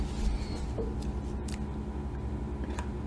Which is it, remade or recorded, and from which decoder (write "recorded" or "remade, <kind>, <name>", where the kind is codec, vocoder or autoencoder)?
recorded